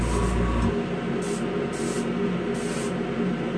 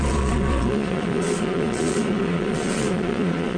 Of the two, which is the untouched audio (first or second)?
first